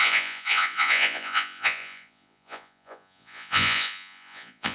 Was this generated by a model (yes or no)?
yes